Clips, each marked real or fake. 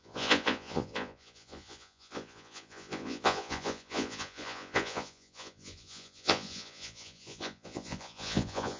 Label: fake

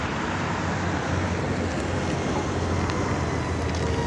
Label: real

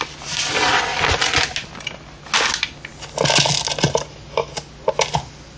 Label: real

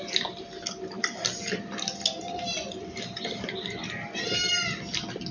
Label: real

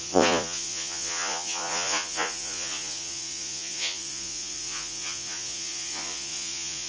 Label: fake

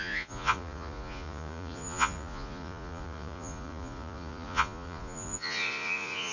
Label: fake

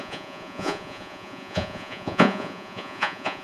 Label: fake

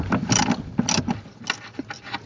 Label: real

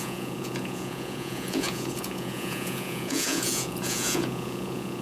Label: fake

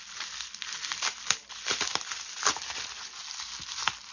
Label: real